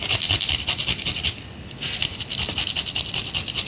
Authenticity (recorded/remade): recorded